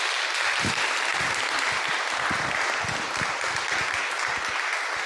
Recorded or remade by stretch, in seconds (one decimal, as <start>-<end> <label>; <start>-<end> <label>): 0.0-5.1 recorded